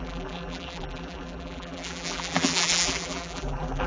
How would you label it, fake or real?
fake